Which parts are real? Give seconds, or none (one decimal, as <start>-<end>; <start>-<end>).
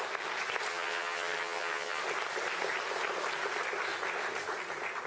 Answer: 0.0-0.7; 2.0-5.1